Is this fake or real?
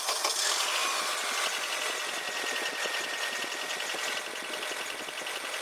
real